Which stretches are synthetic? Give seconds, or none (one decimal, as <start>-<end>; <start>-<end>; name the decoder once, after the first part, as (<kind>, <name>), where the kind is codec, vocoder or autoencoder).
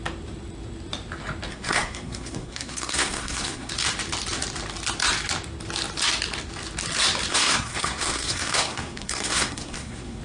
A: 1.5-3.7 (codec, SNAC); 7.3-10.2